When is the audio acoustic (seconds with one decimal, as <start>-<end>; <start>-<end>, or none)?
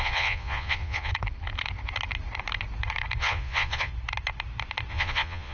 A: 1.1-3.2; 3.9-4.9